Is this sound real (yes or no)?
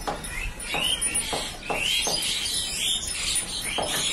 yes